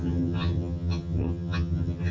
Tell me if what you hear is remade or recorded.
remade